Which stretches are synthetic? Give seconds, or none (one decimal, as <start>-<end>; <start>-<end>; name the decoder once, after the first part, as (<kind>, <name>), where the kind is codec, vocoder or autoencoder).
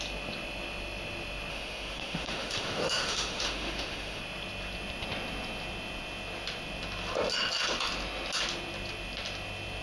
1.5-4.2 (autoencoder, DAC-VAE)